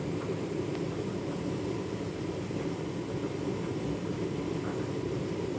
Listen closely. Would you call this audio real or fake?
real